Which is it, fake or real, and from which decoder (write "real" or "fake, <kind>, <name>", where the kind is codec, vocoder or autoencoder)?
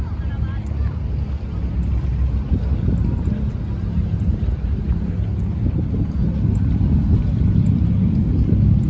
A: real